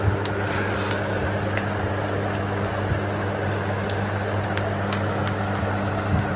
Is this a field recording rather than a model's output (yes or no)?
yes